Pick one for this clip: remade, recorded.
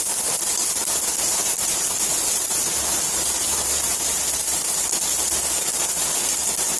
recorded